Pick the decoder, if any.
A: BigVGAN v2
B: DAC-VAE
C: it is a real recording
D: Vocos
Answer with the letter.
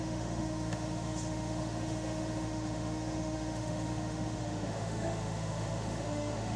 B